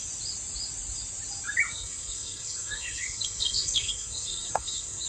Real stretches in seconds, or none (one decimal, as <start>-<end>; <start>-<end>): 0.0-1.7